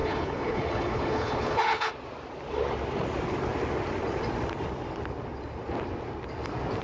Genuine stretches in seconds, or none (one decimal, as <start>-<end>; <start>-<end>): 1.9-6.8